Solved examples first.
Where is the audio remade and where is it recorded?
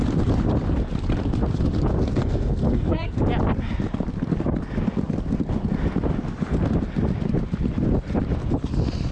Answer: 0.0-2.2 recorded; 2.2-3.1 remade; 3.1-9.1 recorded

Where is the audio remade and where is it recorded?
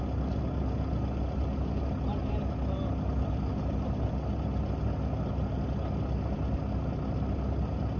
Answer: 0.0-8.0 recorded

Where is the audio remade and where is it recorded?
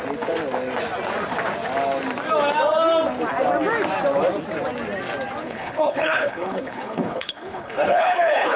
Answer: 0.0-5.4 recorded; 5.4-8.6 remade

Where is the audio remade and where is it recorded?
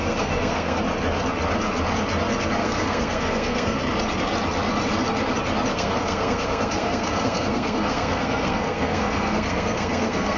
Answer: 0.0-0.8 remade; 0.8-2.6 recorded; 2.6-3.8 remade; 3.8-5.7 recorded; 5.7-10.4 remade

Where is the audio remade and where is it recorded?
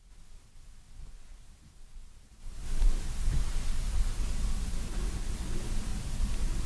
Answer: 0.0-1.3 recorded; 1.3-3.4 remade; 3.4-5.9 recorded; 5.9-6.7 remade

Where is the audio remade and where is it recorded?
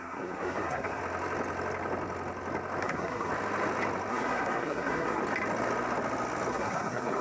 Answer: 0.0-1.0 remade; 1.0-2.8 recorded; 2.8-3.3 remade; 3.3-4.1 recorded; 4.1-5.2 remade; 5.2-6.5 recorded; 6.5-7.2 remade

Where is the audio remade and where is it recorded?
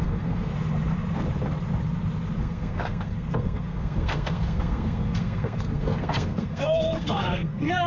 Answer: 0.0-0.5 remade; 0.5-2.4 recorded; 2.4-7.9 remade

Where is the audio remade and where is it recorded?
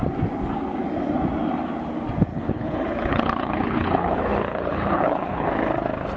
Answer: 0.0-2.3 recorded; 2.3-5.5 remade; 5.5-6.2 recorded